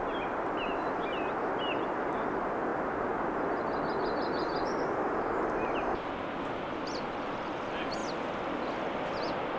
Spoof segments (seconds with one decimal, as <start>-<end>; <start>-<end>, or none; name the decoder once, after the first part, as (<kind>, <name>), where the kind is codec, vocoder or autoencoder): none